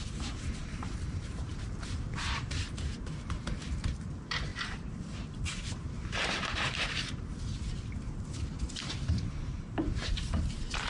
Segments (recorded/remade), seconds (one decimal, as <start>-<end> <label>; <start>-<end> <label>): 0.0-1.5 remade; 1.5-2.2 recorded; 2.2-7.3 remade; 7.3-8.0 recorded; 8.0-10.9 remade